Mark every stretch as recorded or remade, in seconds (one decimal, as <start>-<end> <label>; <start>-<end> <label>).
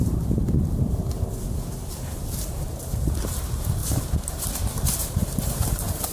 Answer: 0.0-0.4 remade; 0.4-1.9 recorded; 1.9-6.1 remade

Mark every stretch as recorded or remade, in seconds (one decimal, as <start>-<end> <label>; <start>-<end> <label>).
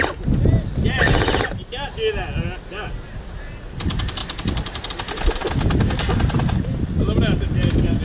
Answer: 0.0-8.0 recorded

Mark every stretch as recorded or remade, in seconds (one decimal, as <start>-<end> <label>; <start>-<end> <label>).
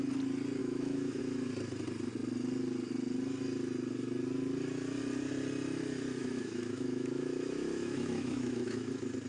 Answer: 0.0-0.6 recorded; 0.6-1.2 remade; 1.2-6.2 recorded; 6.2-8.9 remade; 8.9-9.3 recorded